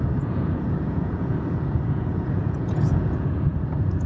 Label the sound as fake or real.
fake